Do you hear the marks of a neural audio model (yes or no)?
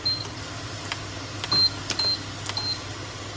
no